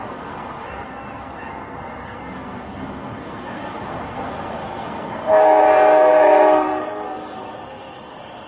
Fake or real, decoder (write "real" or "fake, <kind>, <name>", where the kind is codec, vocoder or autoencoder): fake, codec, SNAC